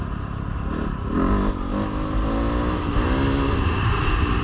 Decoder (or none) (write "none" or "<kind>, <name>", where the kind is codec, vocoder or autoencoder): none